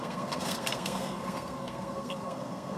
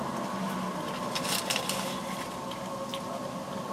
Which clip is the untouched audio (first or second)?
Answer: second